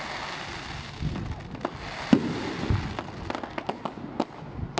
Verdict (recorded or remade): recorded